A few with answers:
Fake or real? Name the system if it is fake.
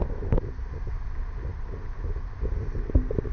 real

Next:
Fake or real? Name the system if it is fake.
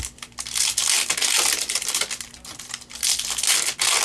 real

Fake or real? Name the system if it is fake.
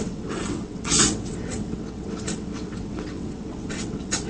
fake, vocoder, WaveNeXt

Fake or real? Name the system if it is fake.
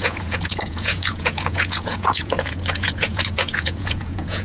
fake, vocoder, Vocos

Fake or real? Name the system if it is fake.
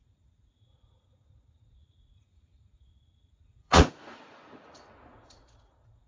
fake, vocoder, Vocos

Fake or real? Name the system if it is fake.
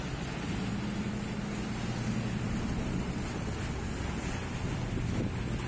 real